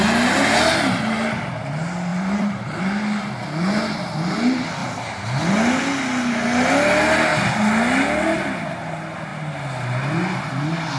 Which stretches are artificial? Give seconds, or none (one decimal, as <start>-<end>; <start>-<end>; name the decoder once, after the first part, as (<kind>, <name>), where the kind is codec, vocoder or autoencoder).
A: 2.1-2.8 (vocoder, BigVGAN v2)